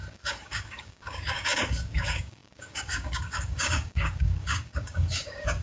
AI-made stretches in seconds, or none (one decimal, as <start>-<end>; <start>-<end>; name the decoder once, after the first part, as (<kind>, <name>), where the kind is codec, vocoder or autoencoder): 0.0-5.6 (codec, DAC)